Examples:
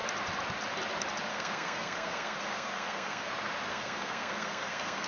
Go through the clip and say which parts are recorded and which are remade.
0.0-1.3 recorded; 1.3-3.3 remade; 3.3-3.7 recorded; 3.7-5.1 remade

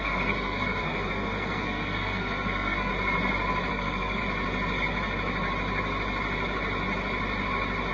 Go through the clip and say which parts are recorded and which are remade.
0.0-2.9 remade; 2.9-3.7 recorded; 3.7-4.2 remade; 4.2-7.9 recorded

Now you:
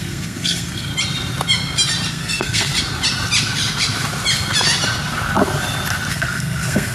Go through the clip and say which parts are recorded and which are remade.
0.0-0.9 remade; 0.9-2.1 recorded; 2.1-2.7 remade; 2.7-6.1 recorded; 6.1-6.9 remade

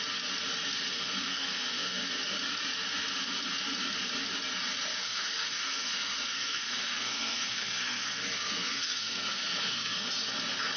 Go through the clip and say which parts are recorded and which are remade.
0.0-0.9 recorded; 0.9-2.1 remade; 2.1-5.0 recorded; 5.0-10.1 remade; 10.1-10.8 recorded

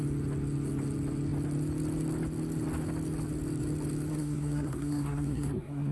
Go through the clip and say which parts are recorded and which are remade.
0.0-4.1 recorded; 4.1-5.9 remade